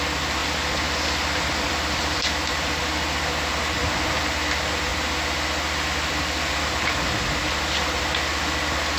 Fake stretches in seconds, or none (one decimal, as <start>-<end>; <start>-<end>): 0.4-2.8

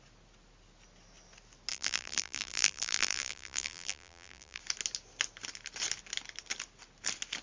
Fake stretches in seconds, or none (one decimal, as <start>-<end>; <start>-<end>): 1.7-4.6

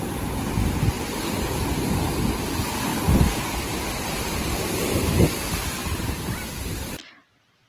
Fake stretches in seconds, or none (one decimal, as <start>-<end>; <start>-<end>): 2.9-5.3; 5.8-6.9

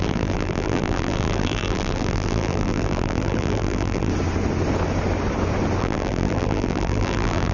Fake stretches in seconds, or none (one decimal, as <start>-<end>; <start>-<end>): 0.0-4.1; 5.8-7.5

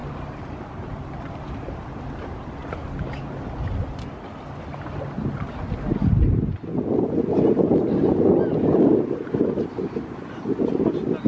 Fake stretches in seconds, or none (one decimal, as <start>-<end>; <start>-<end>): none